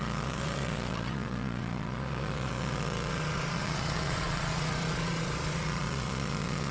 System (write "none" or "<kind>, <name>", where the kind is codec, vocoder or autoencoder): vocoder, Vocos